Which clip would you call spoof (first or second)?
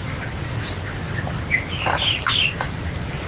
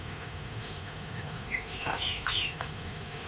second